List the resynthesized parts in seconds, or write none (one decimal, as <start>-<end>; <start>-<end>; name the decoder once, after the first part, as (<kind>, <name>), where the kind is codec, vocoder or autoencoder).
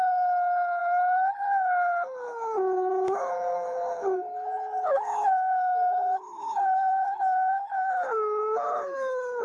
0.0-9.4 (codec, HILCodec)